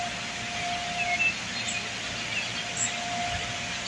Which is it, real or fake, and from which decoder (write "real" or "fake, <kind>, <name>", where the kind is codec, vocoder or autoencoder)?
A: real